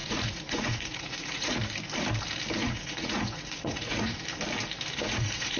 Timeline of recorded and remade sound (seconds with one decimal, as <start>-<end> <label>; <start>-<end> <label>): 0.0-1.6 remade; 1.6-2.6 recorded; 2.6-4.2 remade; 4.2-5.0 recorded; 5.0-5.6 remade